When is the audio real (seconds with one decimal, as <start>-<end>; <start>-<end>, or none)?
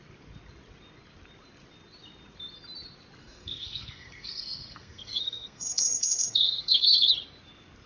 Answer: 0.0-3.2; 7.1-7.9